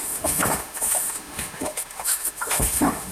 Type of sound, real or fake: fake